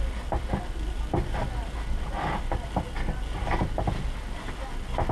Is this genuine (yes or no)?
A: yes